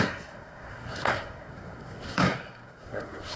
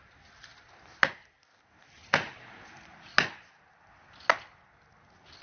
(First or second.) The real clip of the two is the second